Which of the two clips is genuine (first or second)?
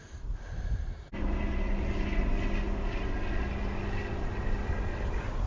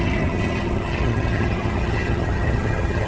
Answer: first